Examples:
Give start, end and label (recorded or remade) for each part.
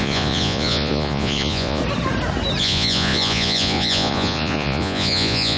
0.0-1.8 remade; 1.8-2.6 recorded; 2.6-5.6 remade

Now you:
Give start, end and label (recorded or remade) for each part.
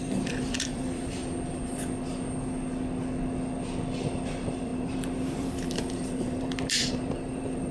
0.0-1.2 remade; 1.2-4.3 recorded; 4.3-7.7 remade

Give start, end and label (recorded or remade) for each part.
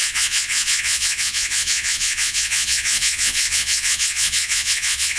0.0-5.2 remade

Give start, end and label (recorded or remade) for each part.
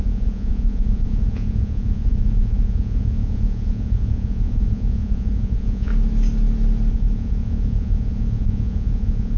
0.0-5.9 remade; 5.9-6.9 recorded; 6.9-9.4 remade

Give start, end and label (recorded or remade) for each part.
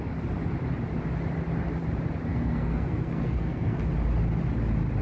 0.0-2.3 recorded; 2.3-3.8 remade; 3.8-5.0 recorded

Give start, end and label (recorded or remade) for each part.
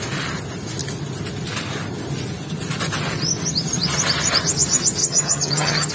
0.0-5.0 recorded; 5.0-5.9 remade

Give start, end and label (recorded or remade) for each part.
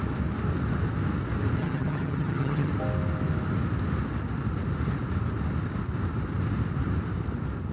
0.0-1.6 recorded; 1.6-2.7 remade; 2.7-7.7 recorded